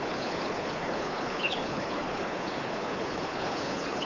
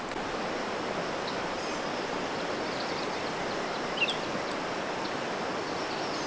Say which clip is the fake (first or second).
first